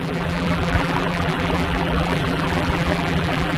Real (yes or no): no